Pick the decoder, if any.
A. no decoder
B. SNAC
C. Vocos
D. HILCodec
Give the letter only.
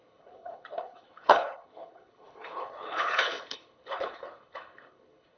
D